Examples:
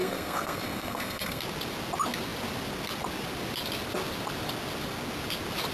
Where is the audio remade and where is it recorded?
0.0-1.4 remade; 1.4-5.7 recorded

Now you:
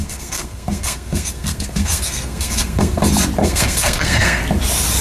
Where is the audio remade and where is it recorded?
0.0-3.0 remade; 3.0-3.4 recorded; 3.4-4.4 remade; 4.4-5.0 recorded

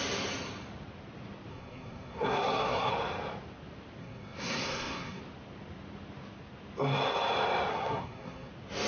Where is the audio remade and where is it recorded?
0.0-1.5 recorded; 1.5-2.9 remade; 2.9-4.0 recorded; 4.0-5.2 remade; 5.2-7.7 recorded; 7.7-8.5 remade; 8.5-8.9 recorded

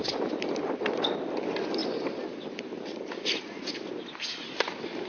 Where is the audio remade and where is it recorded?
0.0-5.1 recorded

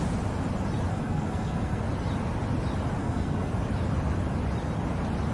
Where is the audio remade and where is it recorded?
0.0-0.9 recorded; 0.9-1.8 remade; 1.8-3.0 recorded; 3.0-3.5 remade; 3.5-5.3 recorded

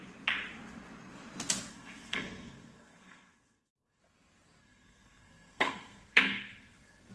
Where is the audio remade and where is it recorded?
0.0-1.7 recorded; 1.7-4.0 remade; 4.0-4.6 recorded; 4.6-7.1 remade

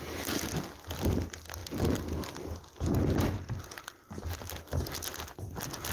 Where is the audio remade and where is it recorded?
0.0-5.9 recorded